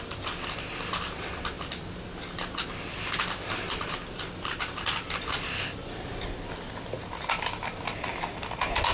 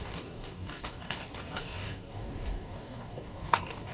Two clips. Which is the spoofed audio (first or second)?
second